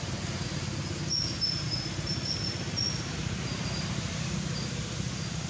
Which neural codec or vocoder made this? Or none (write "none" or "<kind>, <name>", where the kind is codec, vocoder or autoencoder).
none